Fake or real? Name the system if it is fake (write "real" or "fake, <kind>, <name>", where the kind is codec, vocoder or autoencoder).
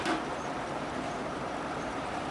fake, vocoder, BigVGAN v2